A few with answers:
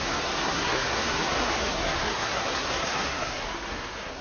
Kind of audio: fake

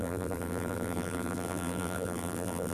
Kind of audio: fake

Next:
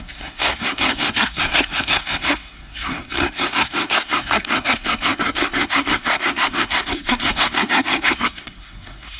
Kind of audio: fake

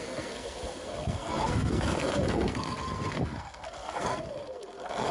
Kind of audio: fake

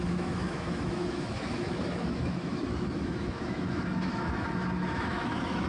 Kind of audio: fake